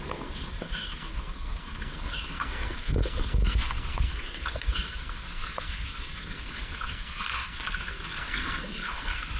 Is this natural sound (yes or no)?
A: no